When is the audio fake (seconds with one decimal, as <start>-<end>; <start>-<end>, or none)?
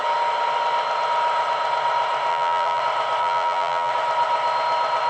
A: 2.3-2.8; 3.2-3.9